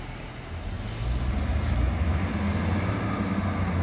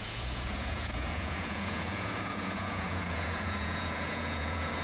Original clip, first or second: first